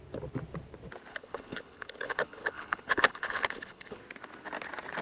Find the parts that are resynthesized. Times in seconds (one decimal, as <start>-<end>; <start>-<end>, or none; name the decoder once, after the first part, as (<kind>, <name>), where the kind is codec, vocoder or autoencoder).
1.1-4.0 (codec, HILCodec)